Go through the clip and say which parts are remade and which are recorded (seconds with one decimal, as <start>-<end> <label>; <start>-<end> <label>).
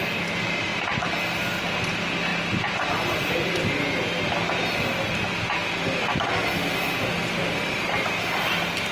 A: 0.0-8.9 recorded